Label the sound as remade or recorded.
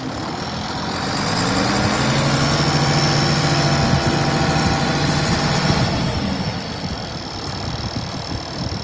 recorded